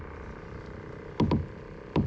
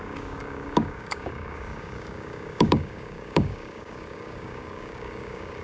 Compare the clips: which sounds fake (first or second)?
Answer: second